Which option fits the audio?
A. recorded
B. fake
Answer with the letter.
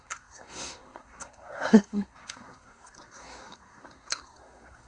B